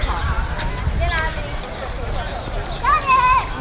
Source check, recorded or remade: recorded